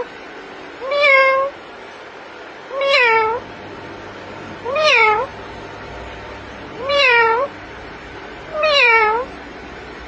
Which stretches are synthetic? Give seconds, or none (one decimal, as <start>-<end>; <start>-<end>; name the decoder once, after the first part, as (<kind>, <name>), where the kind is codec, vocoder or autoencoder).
0.0-1.2 (vocoder, BigVGAN v2); 4.3-10.1